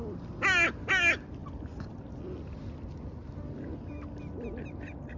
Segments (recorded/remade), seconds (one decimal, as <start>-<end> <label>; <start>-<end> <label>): 0.0-5.2 recorded